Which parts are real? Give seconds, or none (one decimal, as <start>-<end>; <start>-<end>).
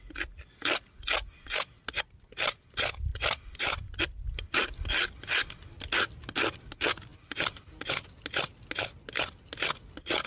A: 0.0-3.1; 4.0-7.1; 7.8-10.3